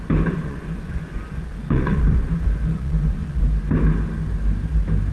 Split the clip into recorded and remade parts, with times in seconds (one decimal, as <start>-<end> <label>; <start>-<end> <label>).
0.0-0.4 recorded; 0.4-3.5 remade; 3.5-5.1 recorded